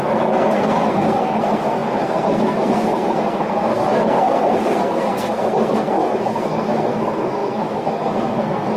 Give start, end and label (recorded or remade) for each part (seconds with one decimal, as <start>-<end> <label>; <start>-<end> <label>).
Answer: 0.0-8.8 remade